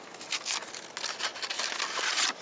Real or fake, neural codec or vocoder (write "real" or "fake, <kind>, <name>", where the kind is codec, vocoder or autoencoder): real